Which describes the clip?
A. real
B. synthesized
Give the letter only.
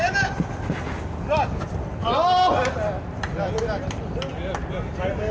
A